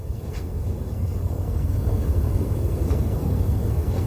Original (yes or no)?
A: no